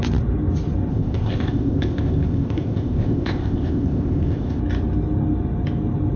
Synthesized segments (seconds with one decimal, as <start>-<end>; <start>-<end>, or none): 0.9-4.6